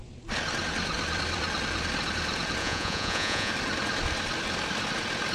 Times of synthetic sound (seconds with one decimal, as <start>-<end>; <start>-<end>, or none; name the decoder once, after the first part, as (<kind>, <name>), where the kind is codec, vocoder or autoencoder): 2.6-3.5 (vocoder, Vocos)